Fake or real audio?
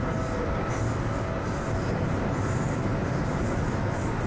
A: real